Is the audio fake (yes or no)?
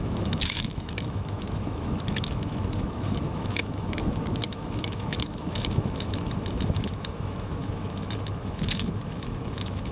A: yes